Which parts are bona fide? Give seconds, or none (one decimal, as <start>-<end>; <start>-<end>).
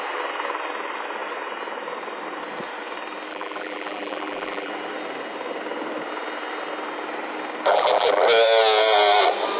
0.0-3.3; 4.7-7.7; 8.2-9.6